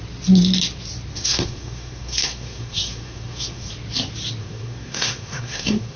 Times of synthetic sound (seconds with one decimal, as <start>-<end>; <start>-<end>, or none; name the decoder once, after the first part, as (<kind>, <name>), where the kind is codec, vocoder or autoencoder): 1.1-3.7 (codec, SNAC); 4.4-6.0